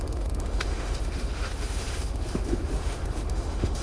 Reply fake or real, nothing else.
fake